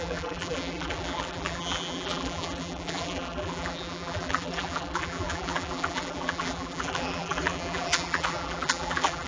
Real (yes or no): no